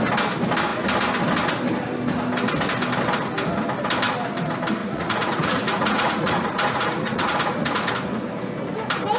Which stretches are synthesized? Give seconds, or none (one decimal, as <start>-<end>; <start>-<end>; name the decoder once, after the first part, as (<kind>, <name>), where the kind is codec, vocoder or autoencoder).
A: 4.8-7.9 (vocoder, Vocos)